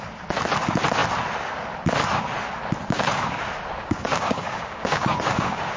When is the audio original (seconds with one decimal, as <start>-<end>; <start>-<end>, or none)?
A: 0.0-2.8; 3.4-3.8